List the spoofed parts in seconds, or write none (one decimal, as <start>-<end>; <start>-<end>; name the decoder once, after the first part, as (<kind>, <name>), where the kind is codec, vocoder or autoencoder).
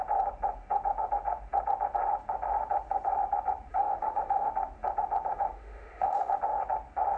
3.7-4.5 (autoencoder, DAC-VAE); 5.3-6.3